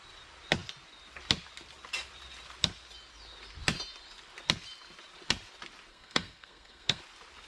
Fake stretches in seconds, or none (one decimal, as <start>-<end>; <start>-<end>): 5.9-7.0